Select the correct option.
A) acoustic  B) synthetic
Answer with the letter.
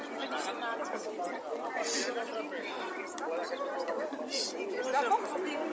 A